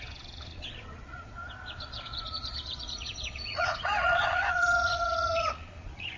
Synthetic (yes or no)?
yes